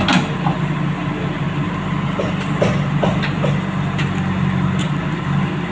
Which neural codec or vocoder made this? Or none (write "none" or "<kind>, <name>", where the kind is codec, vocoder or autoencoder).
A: none